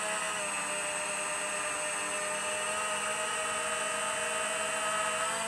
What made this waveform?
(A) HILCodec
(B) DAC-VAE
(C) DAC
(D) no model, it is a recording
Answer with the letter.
D